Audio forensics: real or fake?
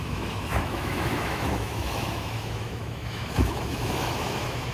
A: fake